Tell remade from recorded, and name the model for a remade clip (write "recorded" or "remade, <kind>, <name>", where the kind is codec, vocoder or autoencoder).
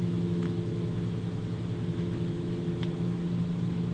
remade, autoencoder, DAC-VAE